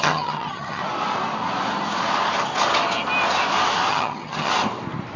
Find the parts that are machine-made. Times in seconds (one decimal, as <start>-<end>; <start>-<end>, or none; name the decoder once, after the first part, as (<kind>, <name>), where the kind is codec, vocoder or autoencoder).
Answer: 0.0-0.8 (vocoder, HiFi-GAN); 3.9-4.5

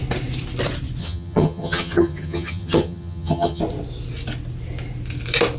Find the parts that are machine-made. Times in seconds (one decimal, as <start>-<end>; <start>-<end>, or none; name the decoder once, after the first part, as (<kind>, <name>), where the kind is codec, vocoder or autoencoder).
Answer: 1.0-3.6 (vocoder, HiFi-GAN)

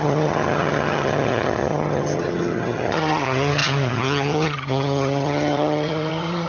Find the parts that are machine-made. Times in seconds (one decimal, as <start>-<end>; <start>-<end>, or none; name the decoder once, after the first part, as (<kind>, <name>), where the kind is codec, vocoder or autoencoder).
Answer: 0.0-6.5 (vocoder, HiFi-GAN)

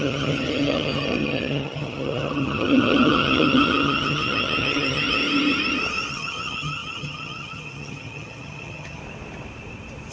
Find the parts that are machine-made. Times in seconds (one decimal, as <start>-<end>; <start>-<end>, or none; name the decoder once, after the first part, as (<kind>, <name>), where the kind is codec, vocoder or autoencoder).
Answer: 0.0-5.2 (vocoder, HiFi-GAN); 6.1-9.0

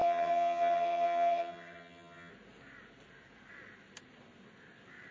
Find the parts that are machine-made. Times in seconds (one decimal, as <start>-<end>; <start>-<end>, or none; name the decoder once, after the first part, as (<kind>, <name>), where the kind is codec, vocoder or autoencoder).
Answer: 0.0-2.3 (vocoder, HiFi-GAN)

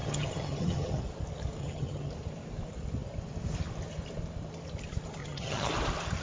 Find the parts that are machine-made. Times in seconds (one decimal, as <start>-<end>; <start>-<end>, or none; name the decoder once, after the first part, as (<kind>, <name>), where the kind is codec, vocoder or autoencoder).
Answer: 0.0-1.0 (vocoder, HiFi-GAN); 1.6-2.1; 5.2-5.7

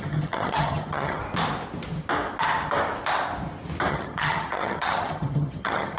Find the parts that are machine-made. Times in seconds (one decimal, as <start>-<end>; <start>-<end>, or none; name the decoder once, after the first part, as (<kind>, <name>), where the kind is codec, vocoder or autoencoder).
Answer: 0.0-1.2 (vocoder, HiFi-GAN); 3.9-6.0

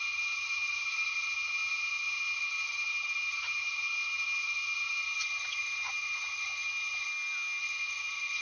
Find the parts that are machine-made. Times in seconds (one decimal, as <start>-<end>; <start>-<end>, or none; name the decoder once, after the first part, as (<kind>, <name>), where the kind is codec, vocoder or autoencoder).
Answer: 0.0-7.1 (vocoder, HiFi-GAN); 7.6-8.4